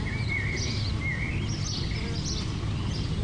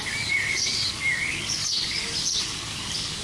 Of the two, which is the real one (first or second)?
first